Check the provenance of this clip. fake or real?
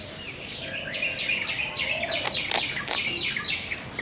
real